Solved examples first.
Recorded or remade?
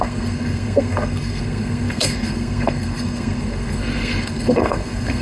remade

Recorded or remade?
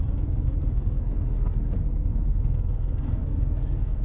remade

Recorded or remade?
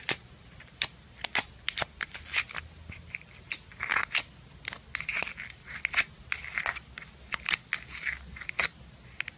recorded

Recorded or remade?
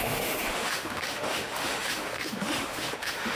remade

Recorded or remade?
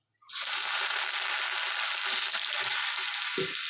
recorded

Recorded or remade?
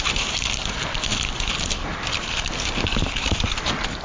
recorded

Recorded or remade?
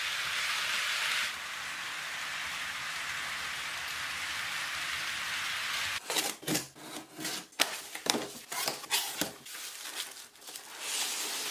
recorded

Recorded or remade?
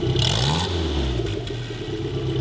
recorded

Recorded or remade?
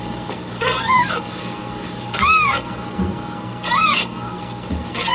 remade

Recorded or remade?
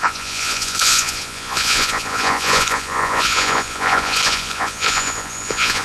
remade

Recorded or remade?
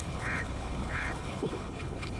remade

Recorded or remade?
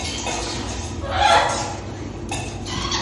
recorded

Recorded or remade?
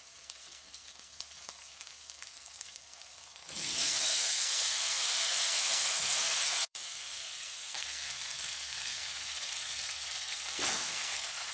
remade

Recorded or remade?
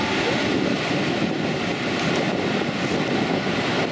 remade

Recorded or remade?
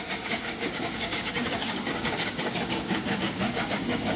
remade